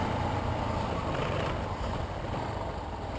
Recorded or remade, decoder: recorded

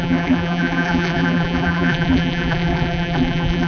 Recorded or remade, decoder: remade, vocoder, BigVGAN v2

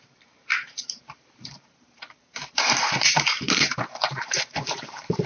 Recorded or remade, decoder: remade, vocoder, BigVGAN v2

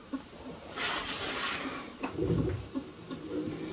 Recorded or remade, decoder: remade, vocoder, BigVGAN v2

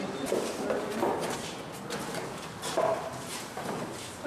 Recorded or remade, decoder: recorded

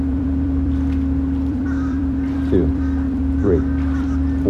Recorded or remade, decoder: remade, vocoder, BigVGAN v2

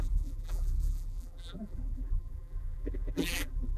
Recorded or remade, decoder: remade, vocoder, BigVGAN v2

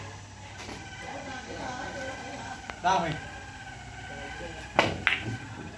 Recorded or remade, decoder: recorded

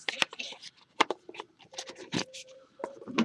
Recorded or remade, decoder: remade, vocoder, BigVGAN v2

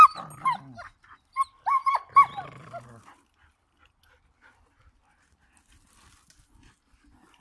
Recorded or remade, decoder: recorded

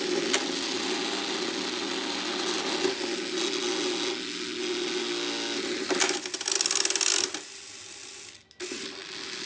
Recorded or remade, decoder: recorded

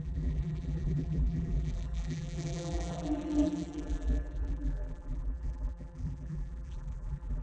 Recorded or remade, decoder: remade, vocoder, BigVGAN v2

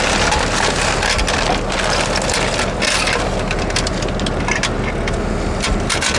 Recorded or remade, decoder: recorded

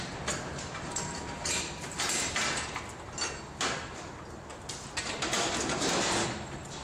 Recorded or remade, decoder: recorded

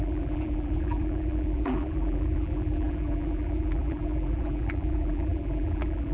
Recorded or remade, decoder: remade, vocoder, BigVGAN v2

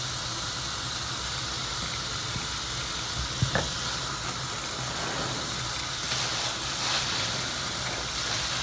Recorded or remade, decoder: recorded